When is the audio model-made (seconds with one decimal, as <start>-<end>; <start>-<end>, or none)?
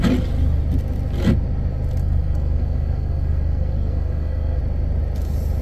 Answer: 2.0-4.6